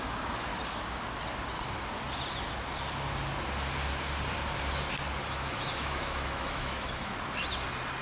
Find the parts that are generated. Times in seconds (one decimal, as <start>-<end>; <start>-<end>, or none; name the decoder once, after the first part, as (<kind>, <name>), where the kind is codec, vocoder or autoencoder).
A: 0.0-0.5 (autoencoder, DAC-VAE); 5.2-7.1